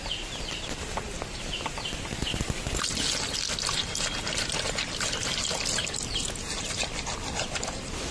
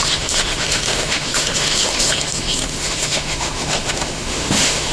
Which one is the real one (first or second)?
first